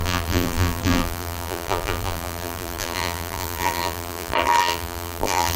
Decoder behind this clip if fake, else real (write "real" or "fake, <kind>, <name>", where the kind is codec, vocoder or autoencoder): fake, vocoder, BigVGAN v2